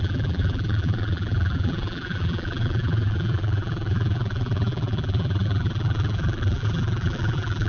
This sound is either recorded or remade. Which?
remade